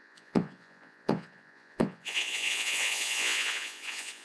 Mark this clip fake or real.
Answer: fake